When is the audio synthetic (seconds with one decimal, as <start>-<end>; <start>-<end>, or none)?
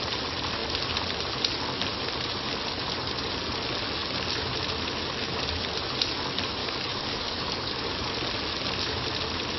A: 6.6-7.9